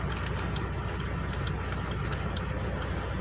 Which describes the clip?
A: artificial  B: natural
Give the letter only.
B